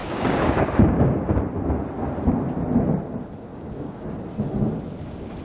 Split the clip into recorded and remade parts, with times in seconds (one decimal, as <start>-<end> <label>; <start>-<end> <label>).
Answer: 0.0-1.1 remade; 1.1-3.5 recorded; 3.5-4.2 remade; 4.2-5.4 recorded